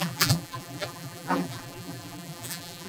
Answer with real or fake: fake